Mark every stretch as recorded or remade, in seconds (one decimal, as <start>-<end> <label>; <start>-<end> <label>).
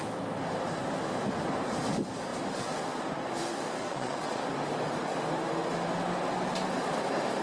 0.0-3.8 recorded; 3.8-4.4 remade; 4.4-7.4 recorded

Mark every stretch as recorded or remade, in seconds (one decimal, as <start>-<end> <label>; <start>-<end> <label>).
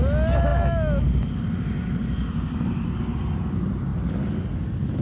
0.0-5.0 recorded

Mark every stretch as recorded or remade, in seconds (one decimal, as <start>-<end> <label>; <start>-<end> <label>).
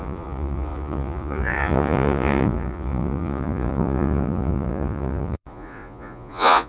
0.0-6.7 remade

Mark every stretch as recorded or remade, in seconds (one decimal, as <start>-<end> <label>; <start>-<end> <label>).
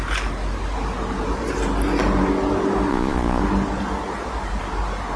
0.0-2.9 recorded; 2.9-3.4 remade; 3.4-5.2 recorded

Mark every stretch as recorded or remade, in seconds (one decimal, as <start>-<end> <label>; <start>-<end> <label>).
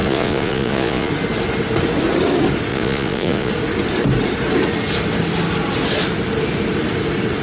0.0-1.1 remade; 1.1-2.7 recorded; 2.7-3.5 remade; 3.5-7.4 recorded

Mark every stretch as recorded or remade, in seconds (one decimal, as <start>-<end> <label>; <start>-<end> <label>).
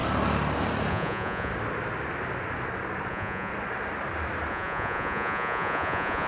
0.0-0.9 recorded; 0.9-1.5 remade; 1.5-3.1 recorded; 3.1-3.5 remade; 3.5-4.5 recorded; 4.5-6.3 remade